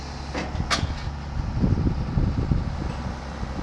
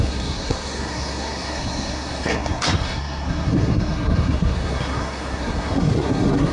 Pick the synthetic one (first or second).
second